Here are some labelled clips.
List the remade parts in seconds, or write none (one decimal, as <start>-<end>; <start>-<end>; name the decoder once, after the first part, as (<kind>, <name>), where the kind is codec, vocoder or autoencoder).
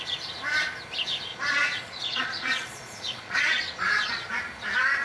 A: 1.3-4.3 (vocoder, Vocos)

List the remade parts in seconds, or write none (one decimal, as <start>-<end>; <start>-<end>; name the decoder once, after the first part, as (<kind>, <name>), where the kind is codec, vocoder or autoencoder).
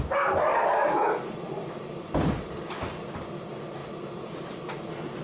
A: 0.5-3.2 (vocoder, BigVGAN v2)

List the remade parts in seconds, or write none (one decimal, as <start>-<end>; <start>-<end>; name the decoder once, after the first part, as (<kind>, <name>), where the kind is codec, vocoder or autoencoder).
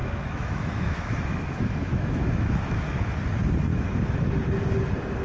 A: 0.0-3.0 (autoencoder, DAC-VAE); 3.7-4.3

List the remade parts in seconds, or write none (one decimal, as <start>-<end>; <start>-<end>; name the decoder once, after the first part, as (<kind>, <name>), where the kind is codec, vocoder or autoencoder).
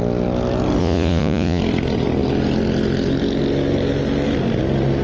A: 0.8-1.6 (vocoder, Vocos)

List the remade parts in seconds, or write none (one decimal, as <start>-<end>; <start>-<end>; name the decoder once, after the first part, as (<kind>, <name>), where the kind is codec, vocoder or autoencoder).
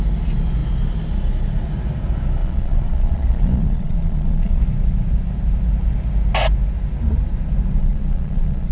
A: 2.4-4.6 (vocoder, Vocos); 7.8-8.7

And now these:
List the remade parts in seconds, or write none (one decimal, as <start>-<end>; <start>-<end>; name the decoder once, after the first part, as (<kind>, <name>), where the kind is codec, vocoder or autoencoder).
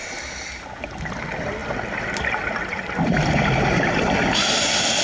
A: none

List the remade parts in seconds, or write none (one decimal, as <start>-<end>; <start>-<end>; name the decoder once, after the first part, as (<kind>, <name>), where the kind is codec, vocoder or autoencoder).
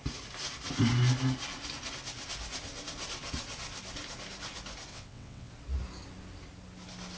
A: 4.9-5.5 (vocoder, WaveNeXt)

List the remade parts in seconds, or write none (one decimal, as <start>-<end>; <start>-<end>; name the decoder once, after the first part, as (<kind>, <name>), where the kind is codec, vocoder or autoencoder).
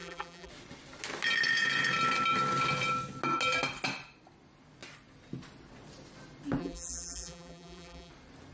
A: 0.0-0.5 (vocoder, BigVGAN v2); 6.6-8.1